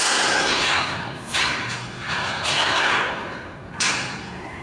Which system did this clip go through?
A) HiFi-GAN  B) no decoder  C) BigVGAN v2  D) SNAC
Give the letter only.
D